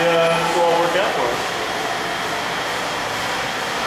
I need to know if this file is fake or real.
real